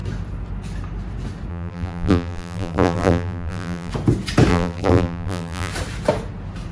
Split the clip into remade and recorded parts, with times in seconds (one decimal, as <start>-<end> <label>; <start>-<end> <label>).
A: 0.0-1.5 recorded; 1.5-3.9 remade; 3.9-4.5 recorded; 4.5-5.7 remade; 5.7-6.7 recorded